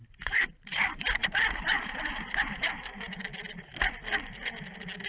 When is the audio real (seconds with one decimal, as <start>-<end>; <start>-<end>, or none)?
3.3-5.1